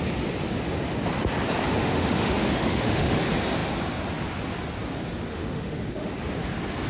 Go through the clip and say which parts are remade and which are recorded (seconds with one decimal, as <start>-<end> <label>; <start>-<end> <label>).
0.0-1.8 recorded; 1.8-3.2 remade; 3.2-5.3 recorded; 5.3-6.1 remade; 6.1-6.9 recorded